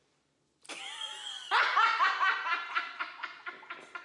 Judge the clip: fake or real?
real